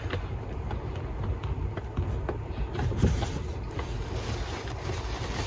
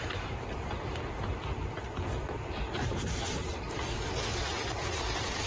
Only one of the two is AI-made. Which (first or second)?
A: second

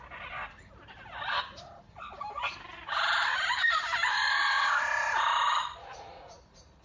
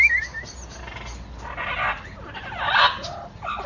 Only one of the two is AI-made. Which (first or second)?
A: first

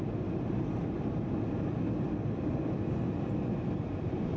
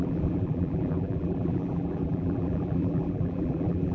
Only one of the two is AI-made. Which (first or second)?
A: second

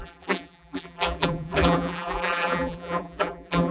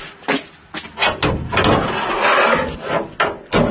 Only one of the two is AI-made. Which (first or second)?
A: first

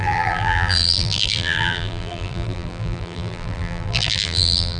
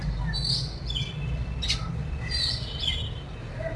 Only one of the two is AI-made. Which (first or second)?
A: first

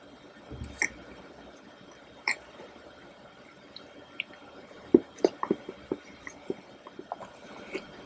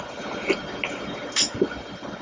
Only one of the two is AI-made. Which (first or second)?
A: first